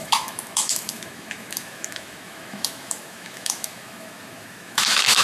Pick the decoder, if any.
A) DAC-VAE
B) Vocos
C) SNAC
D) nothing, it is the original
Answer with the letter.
A